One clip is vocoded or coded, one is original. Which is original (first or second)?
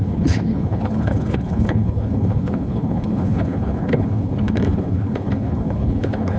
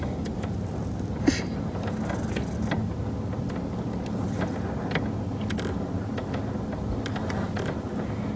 second